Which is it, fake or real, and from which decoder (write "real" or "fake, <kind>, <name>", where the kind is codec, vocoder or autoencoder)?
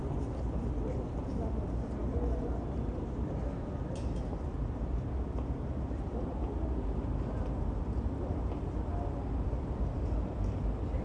real